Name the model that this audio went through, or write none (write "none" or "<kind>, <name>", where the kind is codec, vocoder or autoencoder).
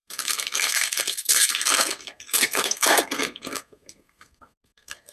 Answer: codec, SNAC